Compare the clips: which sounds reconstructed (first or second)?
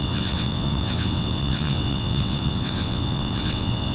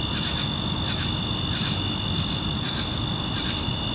first